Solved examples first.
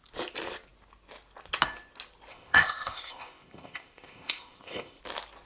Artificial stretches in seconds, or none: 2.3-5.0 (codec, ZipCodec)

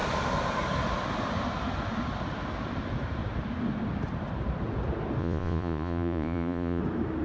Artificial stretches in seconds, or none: 5.2-6.8 (vocoder, Vocos)

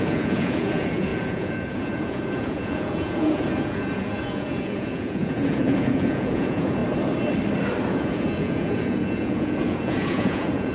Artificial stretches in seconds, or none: 0.0-6.8 (vocoder, Vocos); 7.9-10.7

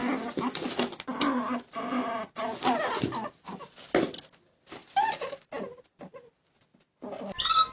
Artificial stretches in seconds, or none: none

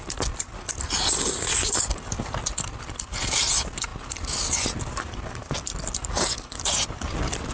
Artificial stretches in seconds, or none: none

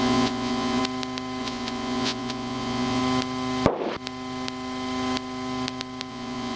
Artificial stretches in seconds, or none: 0.0-0.8 (vocoder, Vocos); 1.4-3.0; 6.1-6.6